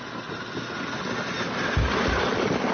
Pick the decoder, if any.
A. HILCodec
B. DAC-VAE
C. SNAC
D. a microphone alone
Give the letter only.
D